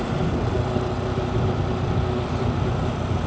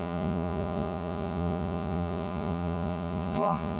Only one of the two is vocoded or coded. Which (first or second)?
second